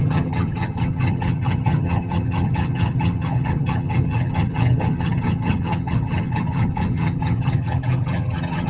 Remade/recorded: remade